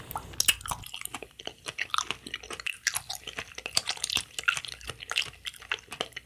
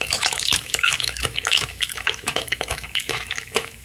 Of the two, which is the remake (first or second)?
second